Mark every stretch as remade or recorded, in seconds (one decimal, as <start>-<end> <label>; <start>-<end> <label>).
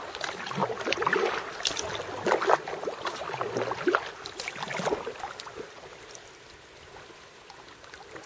0.0-8.3 recorded